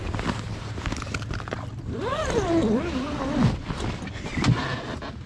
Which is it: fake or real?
real